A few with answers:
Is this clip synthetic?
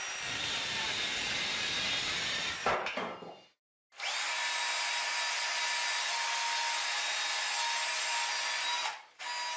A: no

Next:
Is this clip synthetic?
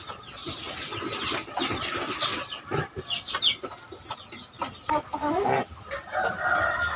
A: no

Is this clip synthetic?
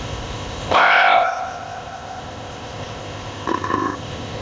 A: yes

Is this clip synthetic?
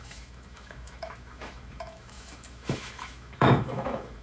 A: yes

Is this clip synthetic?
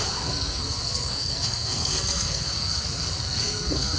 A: yes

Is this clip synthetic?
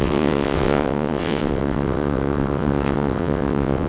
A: yes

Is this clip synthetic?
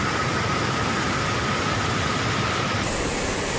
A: no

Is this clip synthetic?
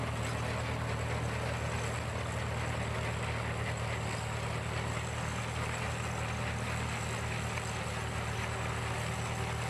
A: no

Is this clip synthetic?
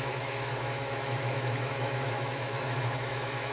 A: yes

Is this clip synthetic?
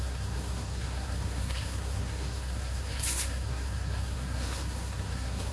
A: yes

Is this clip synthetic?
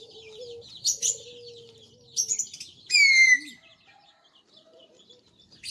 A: no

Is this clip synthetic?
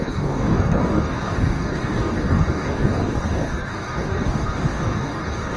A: yes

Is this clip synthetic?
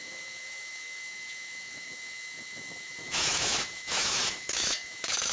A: yes